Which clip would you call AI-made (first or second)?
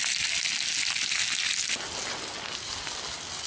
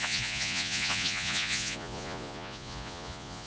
second